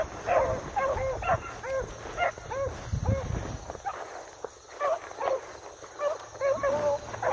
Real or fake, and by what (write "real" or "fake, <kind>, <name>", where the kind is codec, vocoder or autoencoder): real